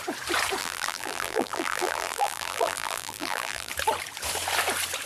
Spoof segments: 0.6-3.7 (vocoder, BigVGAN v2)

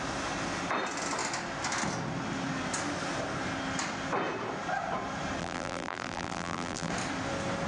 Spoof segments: 5.4-6.9 (vocoder, BigVGAN v2)

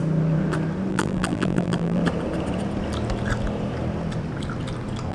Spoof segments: 0.9-2.0 (vocoder, BigVGAN v2)

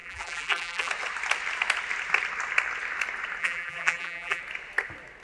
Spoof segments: 0.0-0.9 (vocoder, BigVGAN v2); 3.4-4.4

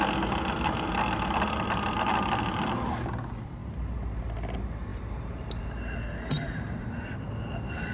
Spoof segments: 3.6-4.2 (vocoder, BigVGAN v2)

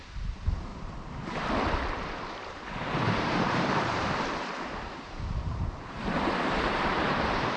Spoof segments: 0.0-0.7 (vocoder, BigVGAN v2); 2.0-7.6